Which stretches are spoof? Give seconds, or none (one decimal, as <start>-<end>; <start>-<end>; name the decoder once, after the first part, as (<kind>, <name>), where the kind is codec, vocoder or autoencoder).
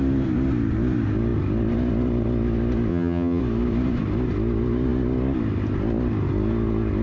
2.9-3.4 (vocoder, HiFi-GAN)